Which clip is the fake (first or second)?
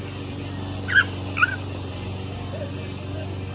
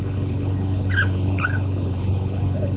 second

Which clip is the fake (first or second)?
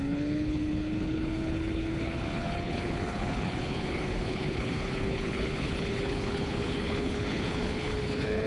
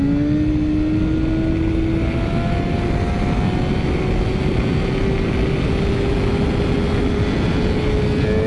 first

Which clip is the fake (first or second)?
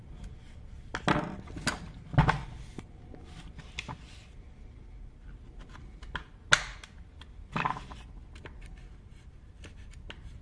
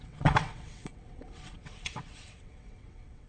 second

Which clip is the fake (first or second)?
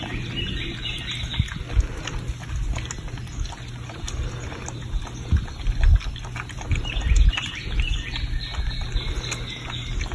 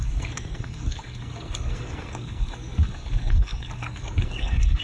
second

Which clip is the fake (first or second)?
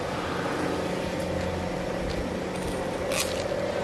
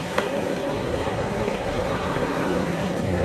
second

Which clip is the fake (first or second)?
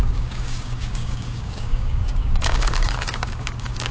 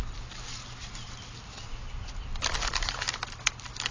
first